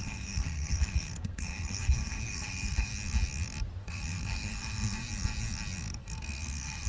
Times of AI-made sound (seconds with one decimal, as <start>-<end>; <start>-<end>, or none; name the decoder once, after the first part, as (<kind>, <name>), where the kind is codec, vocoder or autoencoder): 0.0-2.9 (codec, SNAC); 3.8-5.0; 6.0-6.9

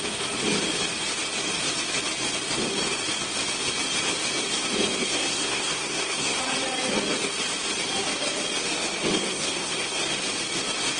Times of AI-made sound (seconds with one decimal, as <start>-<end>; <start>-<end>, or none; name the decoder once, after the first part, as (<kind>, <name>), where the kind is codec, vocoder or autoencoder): 5.0-6.4 (codec, SNAC); 9.2-10.0

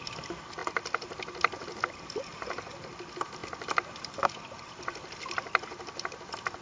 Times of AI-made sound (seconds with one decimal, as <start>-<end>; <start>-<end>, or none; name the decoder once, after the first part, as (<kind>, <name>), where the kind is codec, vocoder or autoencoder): none

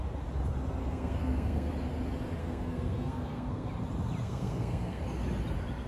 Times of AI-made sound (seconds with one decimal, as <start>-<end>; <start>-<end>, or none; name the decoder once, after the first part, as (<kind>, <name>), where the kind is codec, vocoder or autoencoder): 0.8-1.7 (codec, SNAC); 2.4-3.7; 4.2-5.0

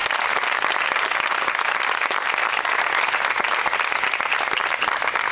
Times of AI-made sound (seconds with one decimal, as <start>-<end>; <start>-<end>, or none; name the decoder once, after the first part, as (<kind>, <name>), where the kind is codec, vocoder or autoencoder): none